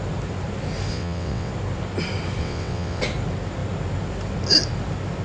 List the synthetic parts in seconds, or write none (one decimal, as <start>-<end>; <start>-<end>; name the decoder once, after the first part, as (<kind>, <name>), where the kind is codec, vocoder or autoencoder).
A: 0.9-1.5 (vocoder, WaveNeXt); 2.4-3.0